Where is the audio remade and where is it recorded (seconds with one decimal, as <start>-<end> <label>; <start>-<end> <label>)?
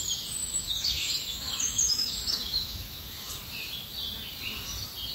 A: 0.0-0.4 recorded; 0.4-3.3 remade; 3.3-5.1 recorded